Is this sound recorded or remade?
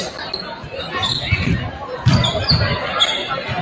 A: recorded